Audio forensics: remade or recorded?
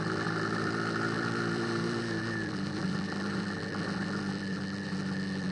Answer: remade